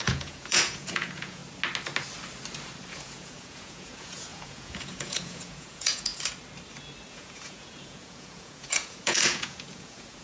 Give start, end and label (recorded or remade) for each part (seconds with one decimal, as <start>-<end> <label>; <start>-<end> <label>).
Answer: 0.0-1.4 remade; 1.4-2.9 recorded; 2.9-6.1 remade; 6.1-7.1 recorded; 7.1-10.2 remade

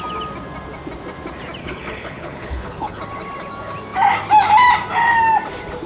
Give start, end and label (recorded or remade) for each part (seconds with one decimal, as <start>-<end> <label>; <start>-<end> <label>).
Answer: 0.0-1.6 recorded; 1.6-3.0 remade; 3.0-5.9 recorded

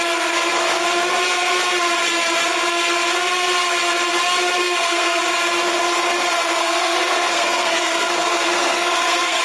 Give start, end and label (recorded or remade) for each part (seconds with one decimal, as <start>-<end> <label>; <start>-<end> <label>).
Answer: 0.0-4.6 recorded; 4.6-5.2 remade; 5.2-6.6 recorded; 6.6-9.4 remade

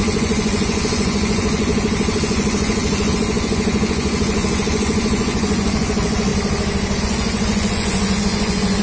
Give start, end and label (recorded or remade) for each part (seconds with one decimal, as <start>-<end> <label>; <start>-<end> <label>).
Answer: 0.0-6.3 remade; 6.3-7.0 recorded; 7.0-8.8 remade

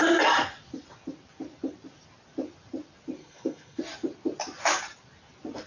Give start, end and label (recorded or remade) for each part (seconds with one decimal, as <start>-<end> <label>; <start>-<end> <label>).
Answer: 0.0-3.2 recorded; 3.2-3.8 remade; 3.8-5.7 recorded

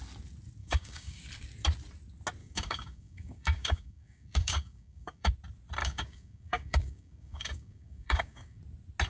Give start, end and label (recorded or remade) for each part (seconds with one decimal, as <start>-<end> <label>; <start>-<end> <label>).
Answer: 0.0-0.6 recorded; 0.6-1.2 remade; 1.2-2.4 recorded; 2.4-5.3 remade; 5.3-5.8 recorded; 5.8-8.6 remade; 8.6-9.1 recorded

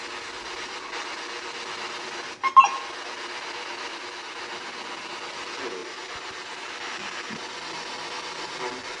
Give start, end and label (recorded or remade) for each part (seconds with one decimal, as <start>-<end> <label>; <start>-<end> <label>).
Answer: 0.0-9.0 recorded